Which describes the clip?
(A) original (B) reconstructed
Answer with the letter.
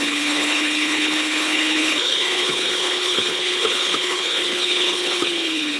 B